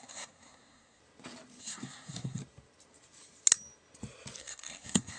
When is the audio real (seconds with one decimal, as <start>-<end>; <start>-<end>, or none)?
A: 1.0-1.6; 2.4-4.4